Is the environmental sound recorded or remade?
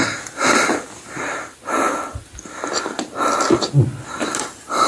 recorded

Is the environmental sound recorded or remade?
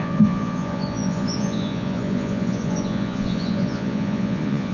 remade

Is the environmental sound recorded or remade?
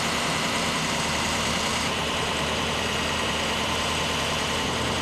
remade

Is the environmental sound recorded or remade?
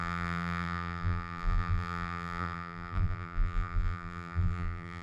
remade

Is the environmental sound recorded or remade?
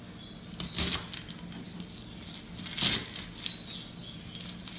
recorded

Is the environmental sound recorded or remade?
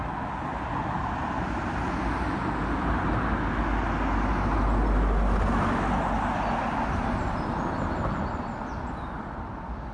recorded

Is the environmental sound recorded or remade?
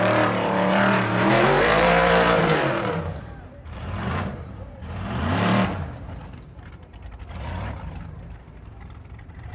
remade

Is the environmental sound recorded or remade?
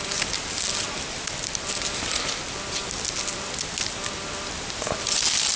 recorded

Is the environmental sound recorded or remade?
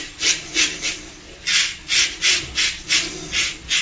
recorded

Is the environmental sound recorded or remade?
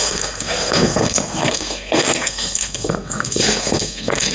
remade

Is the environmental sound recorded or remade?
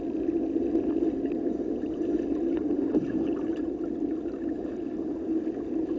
recorded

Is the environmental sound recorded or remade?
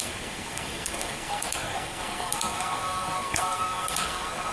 remade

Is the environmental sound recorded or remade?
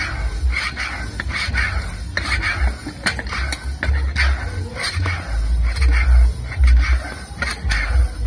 recorded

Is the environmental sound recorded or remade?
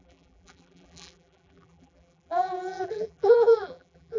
remade